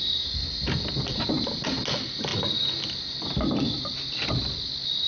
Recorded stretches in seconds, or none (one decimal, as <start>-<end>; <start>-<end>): 0.0-5.1